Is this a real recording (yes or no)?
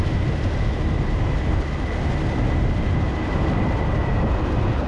yes